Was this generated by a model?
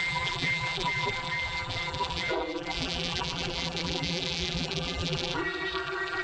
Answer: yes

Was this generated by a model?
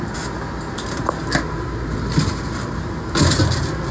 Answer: no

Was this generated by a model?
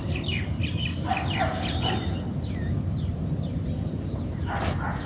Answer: no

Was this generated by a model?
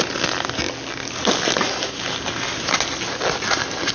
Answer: no